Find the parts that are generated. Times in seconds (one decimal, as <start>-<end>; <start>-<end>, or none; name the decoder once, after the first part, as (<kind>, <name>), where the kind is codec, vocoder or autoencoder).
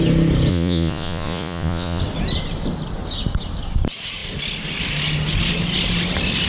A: 0.5-2.0 (vocoder, Vocos)